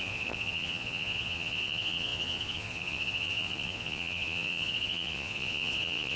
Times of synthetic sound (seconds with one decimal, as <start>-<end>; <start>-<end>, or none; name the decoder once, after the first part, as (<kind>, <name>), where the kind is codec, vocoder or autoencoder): 0.0-6.2 (vocoder, Vocos)